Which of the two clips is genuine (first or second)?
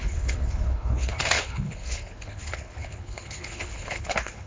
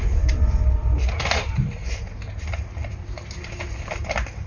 second